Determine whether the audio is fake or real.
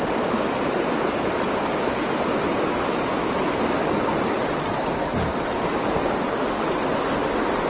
real